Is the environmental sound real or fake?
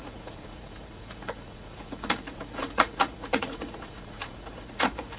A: fake